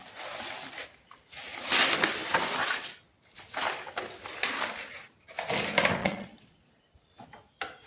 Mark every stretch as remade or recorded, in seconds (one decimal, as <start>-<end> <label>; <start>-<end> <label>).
0.0-6.0 recorded; 6.0-6.8 remade; 6.8-7.9 recorded